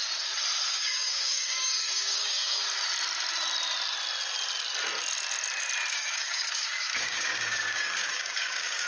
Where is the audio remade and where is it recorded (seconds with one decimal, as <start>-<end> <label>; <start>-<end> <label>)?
0.0-0.7 recorded; 0.7-2.6 remade; 2.6-5.9 recorded; 5.9-8.9 remade